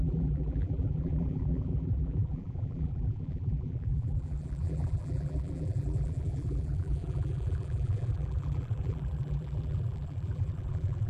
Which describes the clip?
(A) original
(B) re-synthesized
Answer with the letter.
B